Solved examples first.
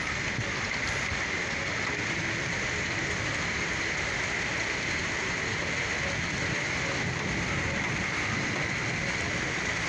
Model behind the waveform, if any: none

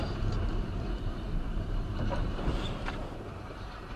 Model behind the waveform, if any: vocoder, BigVGAN v2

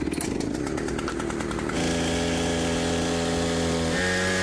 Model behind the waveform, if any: none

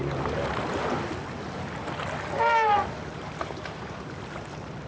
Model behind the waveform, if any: none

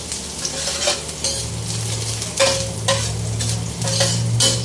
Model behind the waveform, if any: none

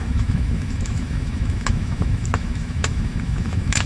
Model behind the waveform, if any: autoencoder, DAC-VAE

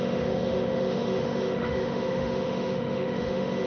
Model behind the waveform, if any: autoencoder, DAC-VAE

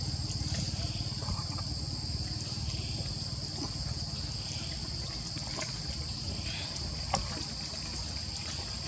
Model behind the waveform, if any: none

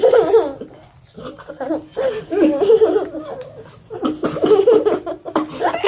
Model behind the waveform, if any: none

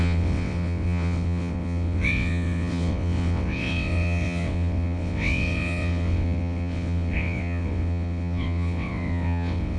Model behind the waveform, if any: vocoder, WaveNeXt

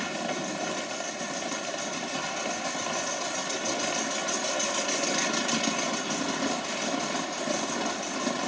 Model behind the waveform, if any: none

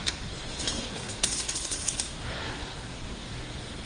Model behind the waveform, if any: codec, SNAC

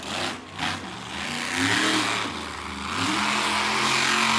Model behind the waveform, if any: none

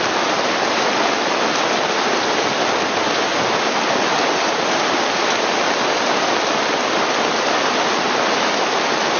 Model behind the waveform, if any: none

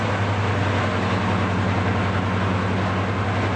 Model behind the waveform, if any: none